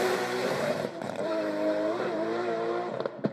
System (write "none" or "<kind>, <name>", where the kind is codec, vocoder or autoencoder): vocoder, BigVGAN v2